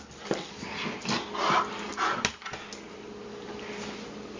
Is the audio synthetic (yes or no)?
no